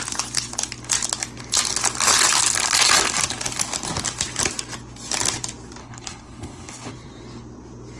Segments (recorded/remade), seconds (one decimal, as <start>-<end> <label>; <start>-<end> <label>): 0.0-5.8 recorded; 5.8-6.9 remade; 6.9-8.0 recorded